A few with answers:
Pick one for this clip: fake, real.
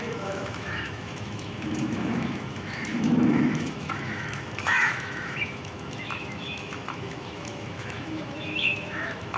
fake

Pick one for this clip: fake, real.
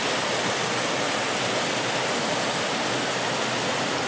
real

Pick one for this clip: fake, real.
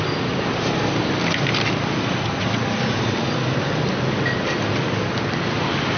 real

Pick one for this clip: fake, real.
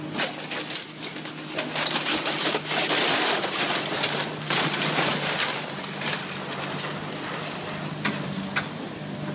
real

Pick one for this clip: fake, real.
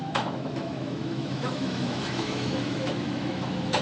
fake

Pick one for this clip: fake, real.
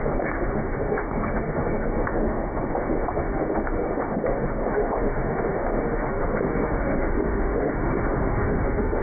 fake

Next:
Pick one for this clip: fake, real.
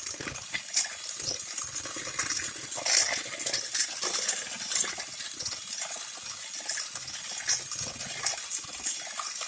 real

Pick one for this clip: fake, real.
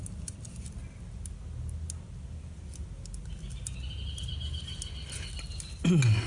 real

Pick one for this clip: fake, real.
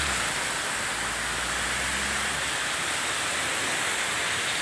real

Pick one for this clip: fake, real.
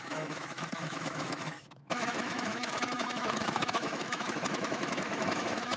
fake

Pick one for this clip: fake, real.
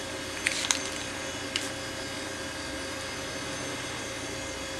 real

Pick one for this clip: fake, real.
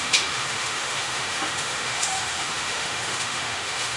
fake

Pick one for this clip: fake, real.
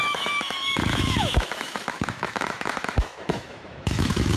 fake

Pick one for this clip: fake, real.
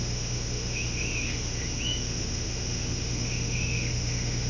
fake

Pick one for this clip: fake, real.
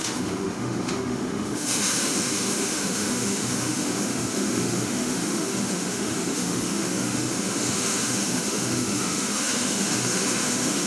fake